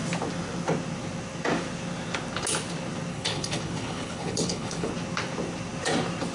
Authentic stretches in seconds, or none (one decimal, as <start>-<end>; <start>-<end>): 0.0-3.1; 4.9-6.3